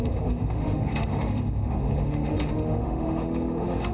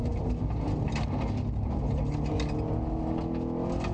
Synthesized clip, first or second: first